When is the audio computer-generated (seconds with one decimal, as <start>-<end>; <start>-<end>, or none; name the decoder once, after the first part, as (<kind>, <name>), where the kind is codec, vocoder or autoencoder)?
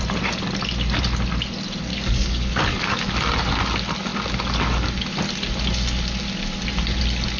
1.9-3.1 (codec, DAC)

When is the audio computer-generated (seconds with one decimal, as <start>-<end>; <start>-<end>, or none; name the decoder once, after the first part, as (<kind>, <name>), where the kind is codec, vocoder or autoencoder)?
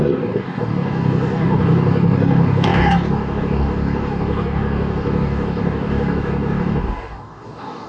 0.0-7.9 (codec, DAC)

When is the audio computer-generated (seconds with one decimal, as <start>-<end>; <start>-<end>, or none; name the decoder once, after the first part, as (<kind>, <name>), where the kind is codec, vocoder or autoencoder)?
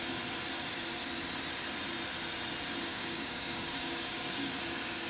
2.9-4.5 (codec, DAC)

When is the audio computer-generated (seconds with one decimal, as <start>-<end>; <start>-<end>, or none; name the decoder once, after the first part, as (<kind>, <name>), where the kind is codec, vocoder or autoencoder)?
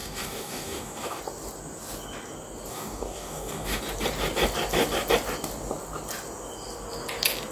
0.0-1.2 (codec, DAC); 2.7-3.8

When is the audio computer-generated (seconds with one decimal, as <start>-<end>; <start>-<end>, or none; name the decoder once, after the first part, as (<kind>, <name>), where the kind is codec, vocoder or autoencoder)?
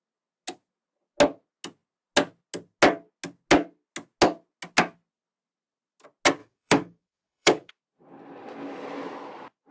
6.4-7.7 (codec, DAC)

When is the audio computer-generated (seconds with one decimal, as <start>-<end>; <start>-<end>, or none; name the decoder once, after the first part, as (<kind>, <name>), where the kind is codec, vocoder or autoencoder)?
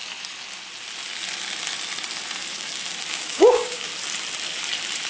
3.1-3.9 (codec, DAC)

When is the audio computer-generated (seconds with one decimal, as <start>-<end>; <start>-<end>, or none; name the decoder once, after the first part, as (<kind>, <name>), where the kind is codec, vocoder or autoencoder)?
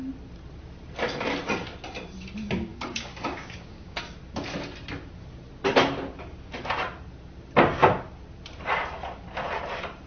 2.7-4.0 (codec, DAC)